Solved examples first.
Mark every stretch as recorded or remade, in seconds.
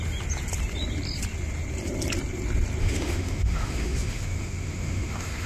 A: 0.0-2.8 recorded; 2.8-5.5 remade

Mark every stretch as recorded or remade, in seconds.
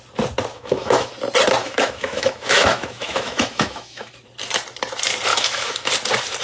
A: 0.0-0.5 recorded; 0.5-1.1 remade; 1.1-1.6 recorded; 1.6-4.1 remade; 4.1-5.3 recorded; 5.3-5.9 remade; 5.9-6.4 recorded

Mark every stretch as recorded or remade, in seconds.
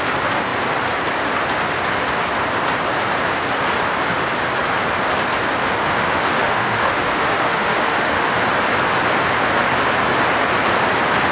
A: 0.0-5.8 recorded; 5.8-8.4 remade; 8.4-11.3 recorded